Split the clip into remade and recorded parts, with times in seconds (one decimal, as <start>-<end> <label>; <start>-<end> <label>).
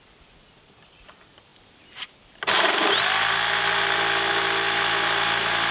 0.0-5.7 recorded